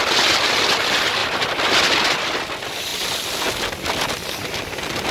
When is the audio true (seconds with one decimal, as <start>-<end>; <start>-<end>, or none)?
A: 0.0-1.2; 1.7-5.1